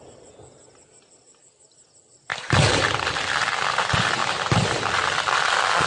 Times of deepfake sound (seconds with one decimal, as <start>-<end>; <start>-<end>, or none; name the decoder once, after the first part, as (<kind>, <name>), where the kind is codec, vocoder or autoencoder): none